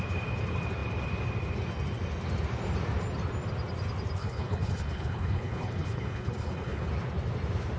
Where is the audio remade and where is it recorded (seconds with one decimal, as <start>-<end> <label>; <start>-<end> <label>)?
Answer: 0.0-4.2 recorded; 4.2-6.9 remade; 6.9-7.8 recorded